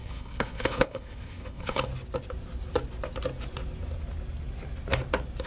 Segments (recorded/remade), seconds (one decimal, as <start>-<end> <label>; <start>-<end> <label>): 0.0-1.9 remade; 1.9-5.5 recorded